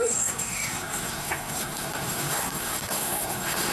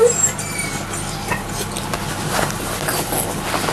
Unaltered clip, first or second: second